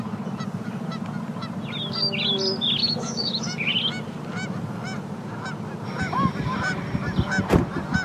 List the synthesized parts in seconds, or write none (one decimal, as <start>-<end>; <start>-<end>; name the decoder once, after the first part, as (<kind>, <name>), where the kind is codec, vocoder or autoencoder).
2.8-3.4 (autoencoder, DAC-VAE)